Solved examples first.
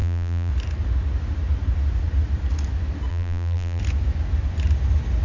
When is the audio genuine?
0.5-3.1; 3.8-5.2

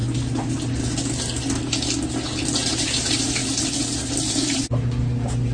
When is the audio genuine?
0.0-2.7; 3.4-4.3